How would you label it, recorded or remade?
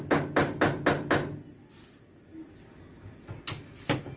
recorded